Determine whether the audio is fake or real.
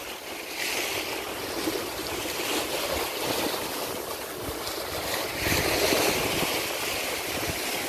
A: real